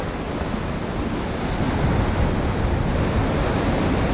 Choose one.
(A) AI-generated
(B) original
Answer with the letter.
B